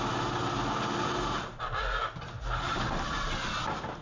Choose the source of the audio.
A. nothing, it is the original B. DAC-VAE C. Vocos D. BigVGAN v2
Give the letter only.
A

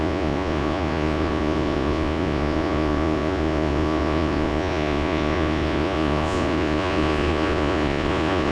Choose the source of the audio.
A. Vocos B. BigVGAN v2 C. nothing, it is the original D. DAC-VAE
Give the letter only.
A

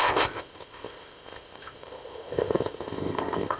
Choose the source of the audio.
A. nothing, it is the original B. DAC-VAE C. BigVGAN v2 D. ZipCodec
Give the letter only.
D